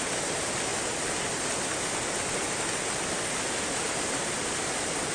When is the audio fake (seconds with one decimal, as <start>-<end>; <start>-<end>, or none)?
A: 0.0-0.7; 3.8-5.1